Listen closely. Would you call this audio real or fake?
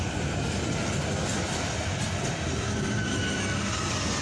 real